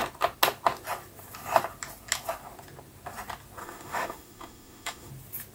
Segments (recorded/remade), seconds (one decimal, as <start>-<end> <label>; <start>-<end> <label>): 0.0-3.6 recorded; 3.6-5.1 remade; 5.1-5.5 recorded